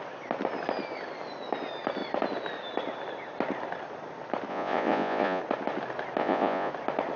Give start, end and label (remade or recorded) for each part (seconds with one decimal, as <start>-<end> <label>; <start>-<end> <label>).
0.0-4.5 recorded; 4.5-5.4 remade; 5.4-6.2 recorded; 6.2-6.7 remade; 6.7-7.2 recorded